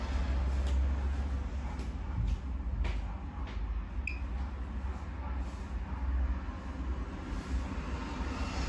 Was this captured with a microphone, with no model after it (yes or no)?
yes